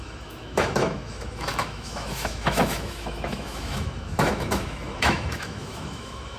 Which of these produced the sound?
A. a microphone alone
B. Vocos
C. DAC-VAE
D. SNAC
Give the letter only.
C